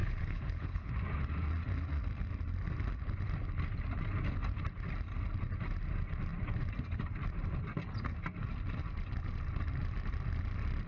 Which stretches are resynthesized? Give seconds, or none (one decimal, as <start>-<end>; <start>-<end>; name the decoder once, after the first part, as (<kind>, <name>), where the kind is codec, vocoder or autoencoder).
0.0-0.9 (codec, HILCodec)